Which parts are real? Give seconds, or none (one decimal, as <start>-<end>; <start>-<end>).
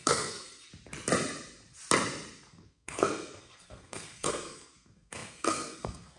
0.7-2.5